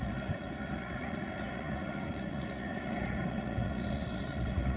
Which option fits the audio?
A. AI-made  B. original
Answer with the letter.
A